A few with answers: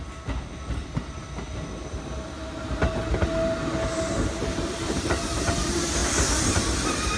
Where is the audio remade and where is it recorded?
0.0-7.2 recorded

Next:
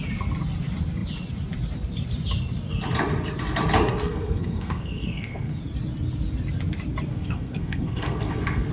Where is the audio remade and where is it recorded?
0.0-3.9 recorded; 3.9-5.6 remade; 5.6-7.1 recorded; 7.1-8.7 remade

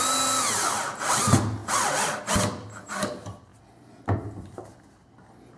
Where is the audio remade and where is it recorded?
0.0-5.6 recorded

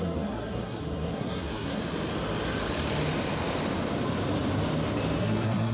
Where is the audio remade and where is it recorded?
0.0-1.8 remade; 1.8-5.2 recorded; 5.2-5.7 remade